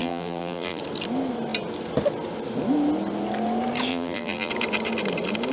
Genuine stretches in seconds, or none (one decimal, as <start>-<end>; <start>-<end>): 0.8-3.9; 4.5-5.5